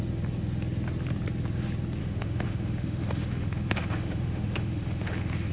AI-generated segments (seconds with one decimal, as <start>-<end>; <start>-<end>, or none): 2.0-5.5